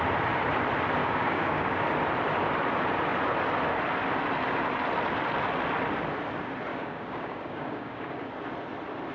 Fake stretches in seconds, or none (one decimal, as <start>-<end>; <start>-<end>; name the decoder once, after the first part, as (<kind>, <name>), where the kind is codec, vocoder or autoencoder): 1.0-1.8 (codec, DAC); 6.7-8.3